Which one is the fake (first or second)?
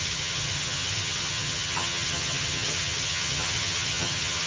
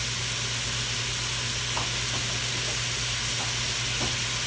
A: first